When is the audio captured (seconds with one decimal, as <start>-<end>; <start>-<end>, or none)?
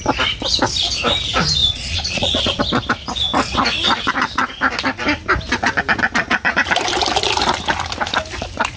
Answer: 0.0-1.6; 2.6-8.8